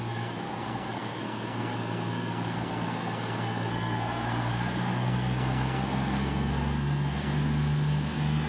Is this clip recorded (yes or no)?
no